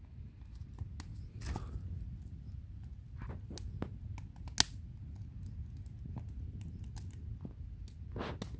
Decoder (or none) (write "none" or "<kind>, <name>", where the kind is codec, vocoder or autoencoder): none